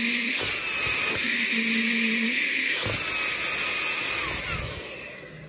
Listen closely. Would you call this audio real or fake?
real